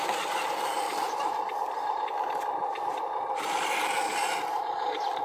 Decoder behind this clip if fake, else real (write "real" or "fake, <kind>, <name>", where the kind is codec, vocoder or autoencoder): fake, vocoder, BigVGAN v2